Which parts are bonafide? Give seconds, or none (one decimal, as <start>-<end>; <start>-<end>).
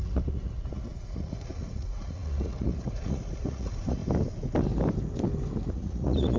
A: 4.0-5.7